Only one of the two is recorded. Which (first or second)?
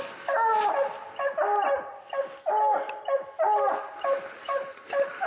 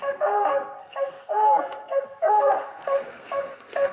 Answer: first